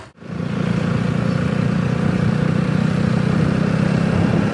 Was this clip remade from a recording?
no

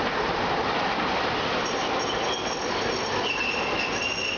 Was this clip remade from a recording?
no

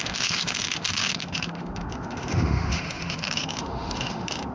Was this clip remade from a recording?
yes